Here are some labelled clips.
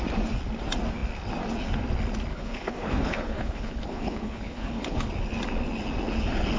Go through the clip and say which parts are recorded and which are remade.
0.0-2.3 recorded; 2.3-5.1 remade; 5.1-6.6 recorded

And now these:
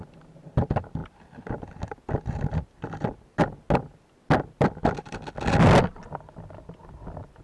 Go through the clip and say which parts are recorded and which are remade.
0.0-7.4 recorded

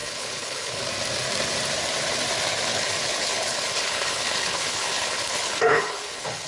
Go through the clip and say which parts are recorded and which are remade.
0.0-0.8 remade; 0.8-2.7 recorded; 2.7-6.5 remade

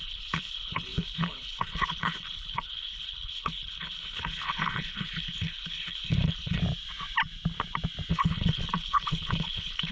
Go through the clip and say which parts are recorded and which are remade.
0.0-6.6 remade; 6.6-8.1 recorded; 8.1-9.9 remade

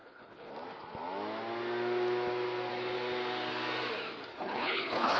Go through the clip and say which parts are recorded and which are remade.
0.0-0.5 remade; 0.5-4.3 recorded; 4.3-5.2 remade